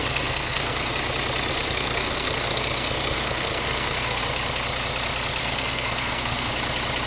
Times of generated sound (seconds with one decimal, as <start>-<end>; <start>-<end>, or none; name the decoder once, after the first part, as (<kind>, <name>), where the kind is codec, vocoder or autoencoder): 0.0-0.9 (codec, SNAC); 1.5-4.2; 5.4-6.5